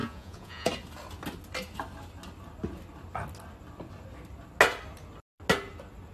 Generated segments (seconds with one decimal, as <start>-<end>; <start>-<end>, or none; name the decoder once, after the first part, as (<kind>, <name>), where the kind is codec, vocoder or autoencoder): 0.0-0.7 (vocoder, Vocos)